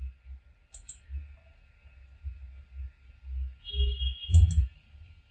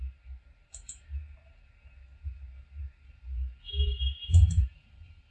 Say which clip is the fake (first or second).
second